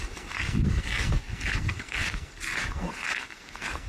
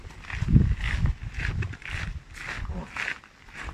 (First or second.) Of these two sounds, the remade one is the first